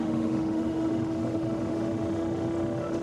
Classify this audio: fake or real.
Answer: fake